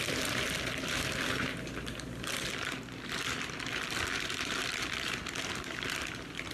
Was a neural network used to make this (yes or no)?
yes